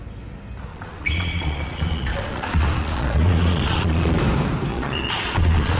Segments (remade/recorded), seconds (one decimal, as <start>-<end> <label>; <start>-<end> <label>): 0.0-0.7 recorded; 0.7-4.2 remade; 4.2-4.7 recorded; 4.7-5.8 remade